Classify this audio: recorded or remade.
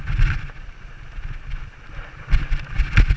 recorded